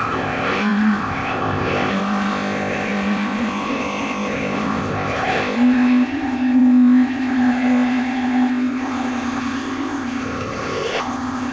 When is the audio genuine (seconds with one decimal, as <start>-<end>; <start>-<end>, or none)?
none